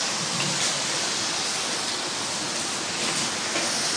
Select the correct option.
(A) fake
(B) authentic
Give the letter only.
B